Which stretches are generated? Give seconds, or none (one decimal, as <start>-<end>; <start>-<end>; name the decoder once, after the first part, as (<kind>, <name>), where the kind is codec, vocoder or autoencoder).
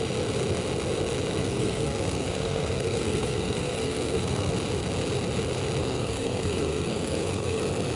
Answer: 1.4-4.5 (codec, SNAC); 5.8-7.6